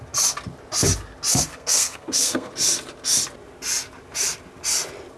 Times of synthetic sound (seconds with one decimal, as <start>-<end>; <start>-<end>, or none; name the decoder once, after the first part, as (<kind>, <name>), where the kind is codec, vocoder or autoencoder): 1.3-2.5 (codec, SNAC)